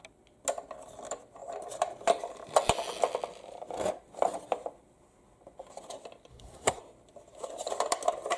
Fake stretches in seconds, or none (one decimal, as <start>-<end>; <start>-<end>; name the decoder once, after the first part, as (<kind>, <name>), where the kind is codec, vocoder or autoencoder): 6.3-6.8 (codec, SNAC)